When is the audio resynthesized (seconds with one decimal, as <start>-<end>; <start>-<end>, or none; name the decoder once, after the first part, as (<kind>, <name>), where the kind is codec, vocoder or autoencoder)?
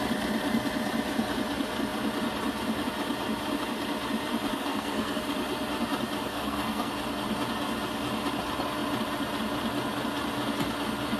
4.5-5.2 (codec, SNAC); 6.3-6.9